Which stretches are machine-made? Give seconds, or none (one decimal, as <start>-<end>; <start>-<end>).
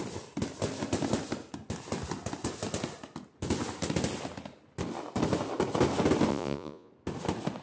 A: 6.3-6.9